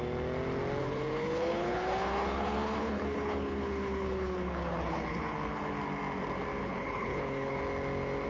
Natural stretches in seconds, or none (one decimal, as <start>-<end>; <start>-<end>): 0.0-0.8; 5.8-6.6; 7.6-8.3